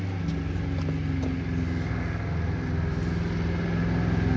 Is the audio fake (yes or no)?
no